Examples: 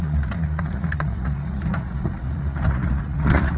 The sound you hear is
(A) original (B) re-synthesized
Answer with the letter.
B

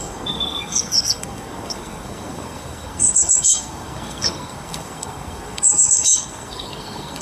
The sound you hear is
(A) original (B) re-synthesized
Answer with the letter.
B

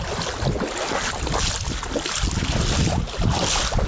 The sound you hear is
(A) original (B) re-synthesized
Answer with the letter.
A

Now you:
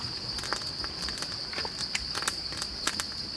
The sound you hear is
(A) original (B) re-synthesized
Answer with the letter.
A